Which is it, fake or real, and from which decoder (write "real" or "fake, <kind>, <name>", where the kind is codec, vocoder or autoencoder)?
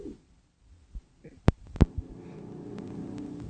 real